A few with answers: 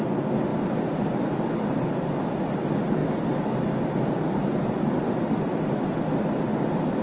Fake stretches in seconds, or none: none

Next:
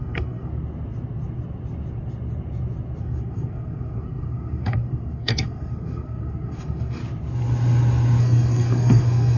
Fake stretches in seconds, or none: 0.0-0.5 (codec, SNAC); 3.0-7.0; 8.2-9.4

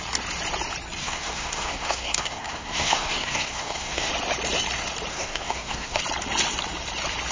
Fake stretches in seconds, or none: 1.0-4.1 (codec, SNAC); 5.1-6.0

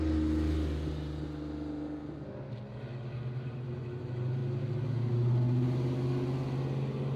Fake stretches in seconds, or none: none

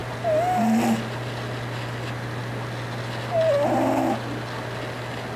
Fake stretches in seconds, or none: none

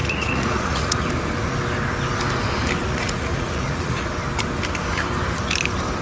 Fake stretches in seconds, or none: 0.0-1.1 (vocoder, Vocos); 2.8-4.1

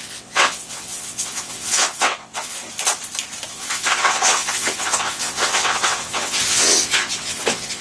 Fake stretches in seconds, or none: 0.0-2.6 (vocoder, WaveNeXt); 3.5-7.8

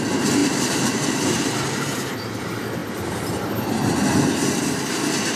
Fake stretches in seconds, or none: 0.4-1.9 (vocoder, BigVGAN v2)